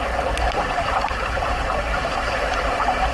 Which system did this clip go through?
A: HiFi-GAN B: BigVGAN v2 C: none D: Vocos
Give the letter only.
B